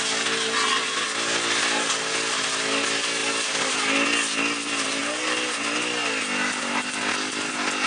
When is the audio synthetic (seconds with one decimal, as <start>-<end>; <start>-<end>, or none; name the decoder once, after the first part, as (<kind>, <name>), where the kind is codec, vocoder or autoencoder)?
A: 3.2-3.9 (vocoder, BigVGAN v2)